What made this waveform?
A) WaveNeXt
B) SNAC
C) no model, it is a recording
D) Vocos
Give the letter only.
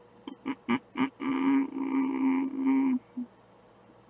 C